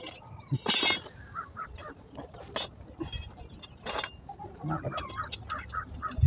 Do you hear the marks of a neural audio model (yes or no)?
no